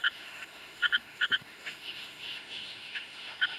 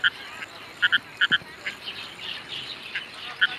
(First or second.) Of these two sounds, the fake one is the first